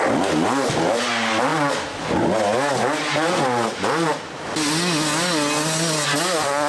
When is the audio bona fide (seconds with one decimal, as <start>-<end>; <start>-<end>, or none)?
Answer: 0.0-6.7

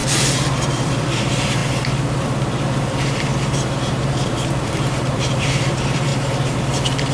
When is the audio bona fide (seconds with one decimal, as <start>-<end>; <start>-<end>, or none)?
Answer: 1.6-2.2; 3.3-3.9; 6.1-7.1

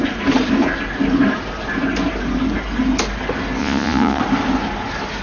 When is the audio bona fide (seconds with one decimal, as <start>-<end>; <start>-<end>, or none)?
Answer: 0.0-3.6; 4.2-5.2